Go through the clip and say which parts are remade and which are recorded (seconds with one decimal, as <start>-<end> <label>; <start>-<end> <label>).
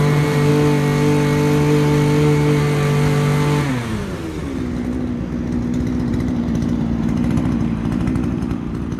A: 0.0-0.5 remade; 0.5-3.7 recorded; 3.7-4.4 remade; 4.4-6.1 recorded; 6.1-9.0 remade